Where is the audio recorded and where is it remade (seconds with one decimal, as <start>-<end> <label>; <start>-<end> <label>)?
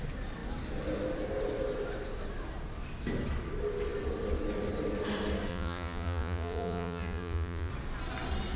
0.0-5.5 recorded; 5.5-7.7 remade; 7.7-8.6 recorded